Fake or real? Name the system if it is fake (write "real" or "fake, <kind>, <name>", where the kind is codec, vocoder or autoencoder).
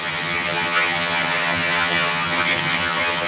fake, vocoder, HiFi-GAN